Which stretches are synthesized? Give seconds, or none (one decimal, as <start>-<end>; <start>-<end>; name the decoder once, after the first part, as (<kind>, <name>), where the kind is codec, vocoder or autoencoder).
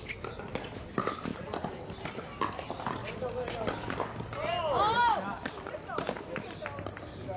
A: none